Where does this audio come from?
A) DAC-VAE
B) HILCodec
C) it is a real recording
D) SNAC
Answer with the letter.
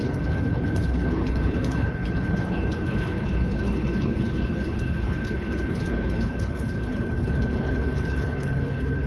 B